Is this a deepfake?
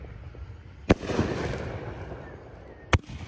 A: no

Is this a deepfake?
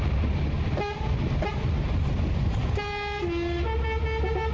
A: no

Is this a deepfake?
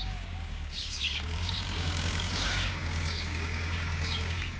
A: yes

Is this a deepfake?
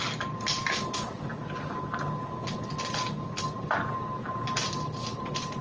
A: no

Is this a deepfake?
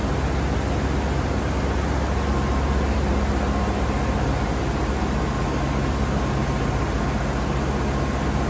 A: no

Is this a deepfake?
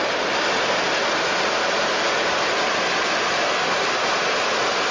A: no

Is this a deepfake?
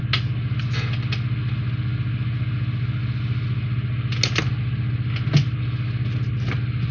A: no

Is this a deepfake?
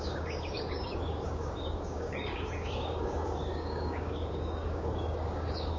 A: yes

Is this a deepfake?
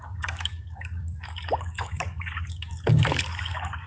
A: yes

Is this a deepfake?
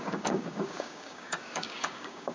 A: yes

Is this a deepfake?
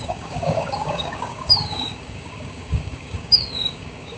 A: yes